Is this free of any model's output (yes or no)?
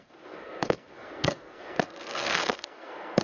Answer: no